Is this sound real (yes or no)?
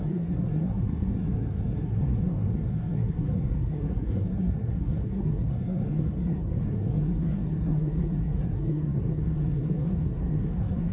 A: no